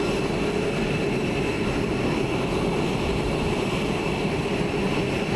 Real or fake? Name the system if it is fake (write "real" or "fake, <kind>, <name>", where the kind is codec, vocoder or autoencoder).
real